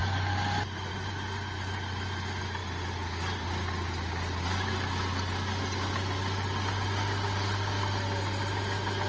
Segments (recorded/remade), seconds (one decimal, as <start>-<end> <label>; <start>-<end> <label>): 0.0-9.1 recorded